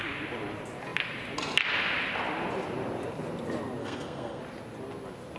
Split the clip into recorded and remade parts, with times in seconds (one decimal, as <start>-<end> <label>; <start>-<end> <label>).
0.0-3.8 recorded; 3.8-4.4 remade; 4.4-5.4 recorded